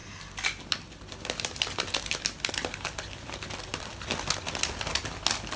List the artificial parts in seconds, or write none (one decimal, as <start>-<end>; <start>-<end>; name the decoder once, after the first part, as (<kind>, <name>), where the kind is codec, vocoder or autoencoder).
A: none